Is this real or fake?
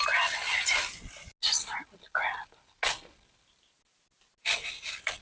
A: real